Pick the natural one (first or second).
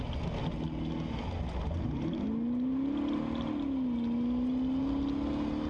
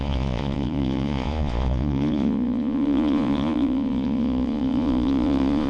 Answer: first